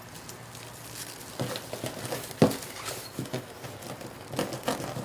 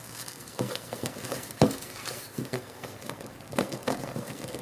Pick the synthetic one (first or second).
second